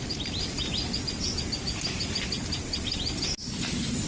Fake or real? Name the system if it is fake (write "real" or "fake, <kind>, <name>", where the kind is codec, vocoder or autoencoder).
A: real